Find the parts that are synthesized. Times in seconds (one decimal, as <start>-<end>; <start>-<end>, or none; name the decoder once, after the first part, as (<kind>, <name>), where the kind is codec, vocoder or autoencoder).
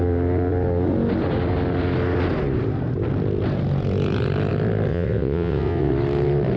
4.9-5.9 (vocoder, WaveNeXt)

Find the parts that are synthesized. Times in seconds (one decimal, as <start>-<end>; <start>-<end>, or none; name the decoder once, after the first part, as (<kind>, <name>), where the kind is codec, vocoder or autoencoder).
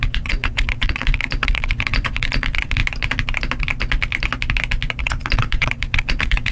0.0-2.8 (vocoder, WaveNeXt); 5.0-6.5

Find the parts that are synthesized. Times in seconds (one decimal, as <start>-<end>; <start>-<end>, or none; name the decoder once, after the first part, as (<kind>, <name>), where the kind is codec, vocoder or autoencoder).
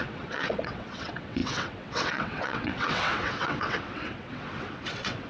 0.0-5.3 (vocoder, WaveNeXt)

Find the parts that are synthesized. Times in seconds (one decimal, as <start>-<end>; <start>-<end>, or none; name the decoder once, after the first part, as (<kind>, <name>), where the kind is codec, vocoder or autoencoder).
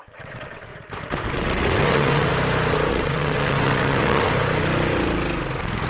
0.0-0.7 (vocoder, WaveNeXt); 1.3-2.3; 2.9-4.3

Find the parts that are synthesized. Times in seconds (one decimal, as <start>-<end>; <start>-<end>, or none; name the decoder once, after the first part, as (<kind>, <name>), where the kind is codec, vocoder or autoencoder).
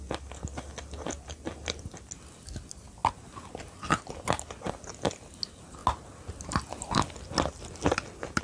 none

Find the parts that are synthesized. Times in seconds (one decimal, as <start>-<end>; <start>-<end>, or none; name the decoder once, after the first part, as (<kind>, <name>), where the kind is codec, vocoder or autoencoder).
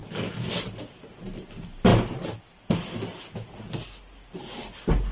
none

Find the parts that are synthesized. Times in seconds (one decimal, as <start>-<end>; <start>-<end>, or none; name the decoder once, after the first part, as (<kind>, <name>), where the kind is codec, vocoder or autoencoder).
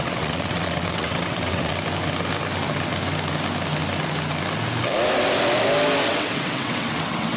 0.0-1.7 (vocoder, WaveNeXt); 6.1-7.4